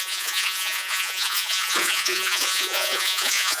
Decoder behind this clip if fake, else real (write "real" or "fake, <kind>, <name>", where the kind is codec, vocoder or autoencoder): fake, vocoder, Vocos